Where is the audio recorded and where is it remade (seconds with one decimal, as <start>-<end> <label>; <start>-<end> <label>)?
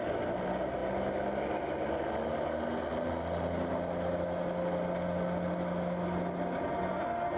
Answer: 0.0-7.4 recorded